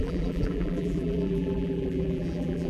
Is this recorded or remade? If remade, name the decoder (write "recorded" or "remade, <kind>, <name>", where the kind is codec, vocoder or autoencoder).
remade, vocoder, BigVGAN v2